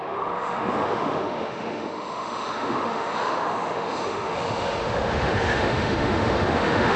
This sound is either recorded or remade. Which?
remade